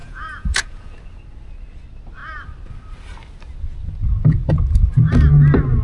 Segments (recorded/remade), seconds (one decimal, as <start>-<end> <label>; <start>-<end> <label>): 0.0-0.9 remade; 0.9-5.8 recorded